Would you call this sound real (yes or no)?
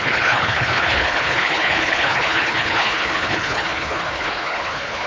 no